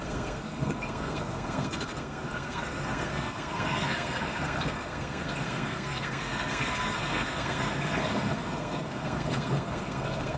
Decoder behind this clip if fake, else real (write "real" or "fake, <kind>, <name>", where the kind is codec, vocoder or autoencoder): fake, codec, SNAC